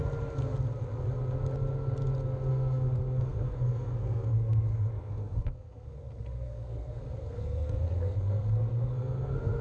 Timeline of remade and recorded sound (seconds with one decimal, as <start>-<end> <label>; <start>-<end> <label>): 0.0-2.5 recorded; 2.5-9.6 remade